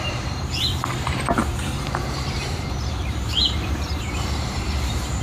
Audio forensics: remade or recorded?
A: remade